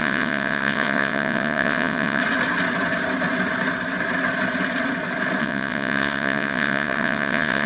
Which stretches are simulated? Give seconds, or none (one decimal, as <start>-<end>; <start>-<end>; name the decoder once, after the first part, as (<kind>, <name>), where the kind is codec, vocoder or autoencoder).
0.0-2.2 (vocoder, WaveNeXt); 5.4-7.7